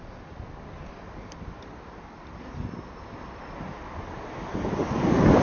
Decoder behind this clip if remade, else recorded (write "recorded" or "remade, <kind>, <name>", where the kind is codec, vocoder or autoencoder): recorded